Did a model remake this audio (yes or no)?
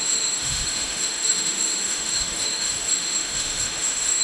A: yes